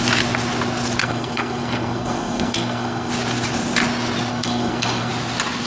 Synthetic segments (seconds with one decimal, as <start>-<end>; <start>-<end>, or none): 1.0-3.1; 4.3-5.1